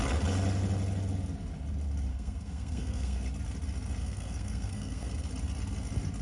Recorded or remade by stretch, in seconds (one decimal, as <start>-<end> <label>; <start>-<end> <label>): 0.0-2.1 recorded; 2.1-3.2 remade; 3.2-4.0 recorded; 4.0-5.3 remade; 5.3-6.2 recorded